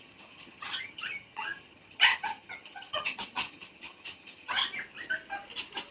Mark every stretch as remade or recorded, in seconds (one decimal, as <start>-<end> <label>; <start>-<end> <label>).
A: 0.0-4.6 remade; 4.6-5.9 recorded